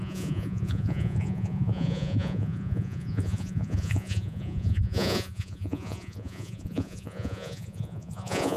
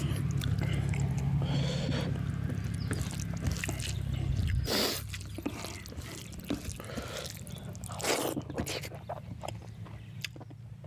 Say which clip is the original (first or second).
second